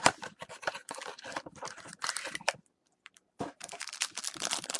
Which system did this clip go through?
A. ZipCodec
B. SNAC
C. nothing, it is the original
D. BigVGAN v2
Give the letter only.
D